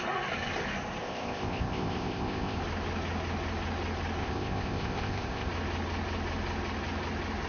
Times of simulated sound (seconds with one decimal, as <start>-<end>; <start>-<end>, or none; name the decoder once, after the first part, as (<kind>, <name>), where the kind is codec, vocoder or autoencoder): 1.0-2.6 (codec, ZipCodec); 4.2-5.5